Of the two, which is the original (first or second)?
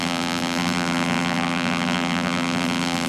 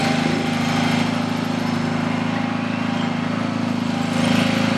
second